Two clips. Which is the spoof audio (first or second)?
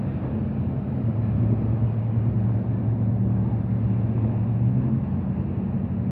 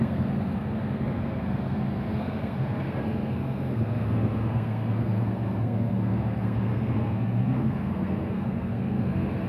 second